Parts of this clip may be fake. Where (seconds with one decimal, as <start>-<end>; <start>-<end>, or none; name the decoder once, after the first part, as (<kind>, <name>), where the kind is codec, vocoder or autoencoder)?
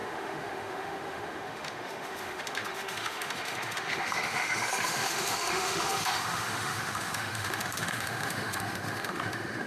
0.0-9.7 (autoencoder, DAC-VAE)